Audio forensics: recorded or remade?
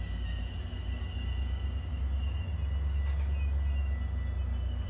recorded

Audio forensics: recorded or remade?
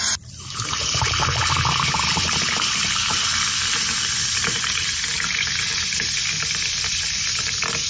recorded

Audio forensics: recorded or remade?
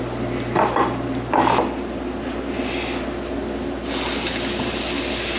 recorded